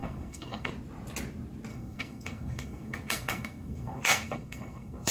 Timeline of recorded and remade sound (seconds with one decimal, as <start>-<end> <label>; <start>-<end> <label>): 0.0-0.7 remade; 0.7-1.7 recorded; 1.7-5.1 remade